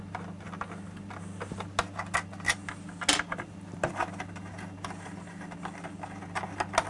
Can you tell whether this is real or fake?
real